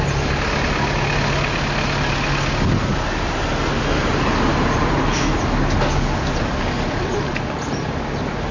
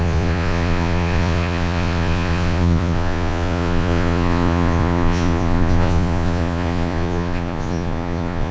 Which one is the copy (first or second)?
second